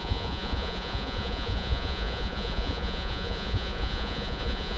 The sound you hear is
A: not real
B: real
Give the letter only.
A